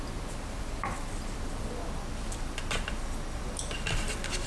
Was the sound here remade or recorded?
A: recorded